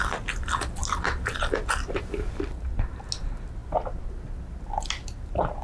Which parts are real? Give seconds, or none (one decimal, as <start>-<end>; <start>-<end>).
0.0-5.6